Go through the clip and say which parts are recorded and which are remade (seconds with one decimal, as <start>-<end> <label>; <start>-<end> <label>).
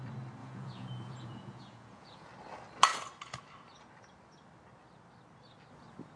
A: 0.0-0.4 recorded; 0.4-2.3 remade; 2.3-6.2 recorded